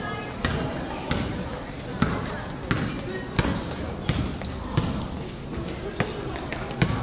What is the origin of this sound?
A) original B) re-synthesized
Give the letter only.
A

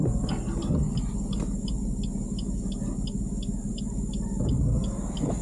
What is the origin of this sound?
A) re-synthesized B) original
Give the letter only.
B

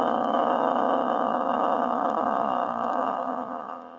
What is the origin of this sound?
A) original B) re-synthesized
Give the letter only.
B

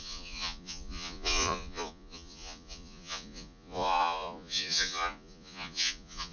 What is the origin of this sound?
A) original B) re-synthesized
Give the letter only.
B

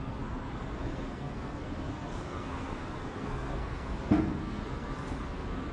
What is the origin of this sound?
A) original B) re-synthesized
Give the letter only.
B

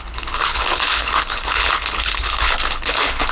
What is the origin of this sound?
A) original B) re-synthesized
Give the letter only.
B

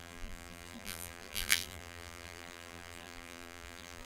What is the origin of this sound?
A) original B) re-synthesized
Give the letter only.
B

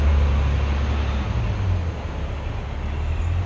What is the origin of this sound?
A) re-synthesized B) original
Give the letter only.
B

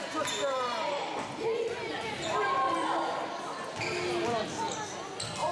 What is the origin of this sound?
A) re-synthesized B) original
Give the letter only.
B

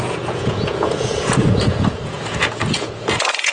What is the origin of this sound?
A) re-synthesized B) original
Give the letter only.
A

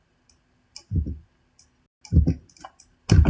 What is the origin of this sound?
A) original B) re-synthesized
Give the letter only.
A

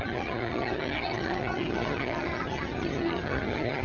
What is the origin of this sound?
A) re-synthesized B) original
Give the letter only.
A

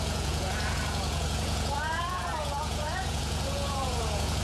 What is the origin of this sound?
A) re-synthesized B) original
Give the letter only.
A